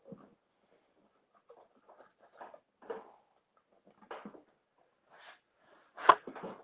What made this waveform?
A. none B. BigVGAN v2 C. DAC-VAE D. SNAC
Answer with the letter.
A